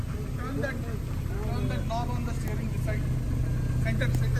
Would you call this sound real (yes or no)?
yes